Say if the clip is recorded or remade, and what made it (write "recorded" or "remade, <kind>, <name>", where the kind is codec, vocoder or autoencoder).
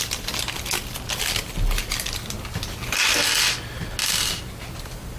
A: recorded